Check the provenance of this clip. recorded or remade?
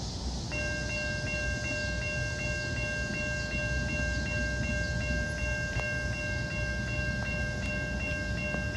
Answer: recorded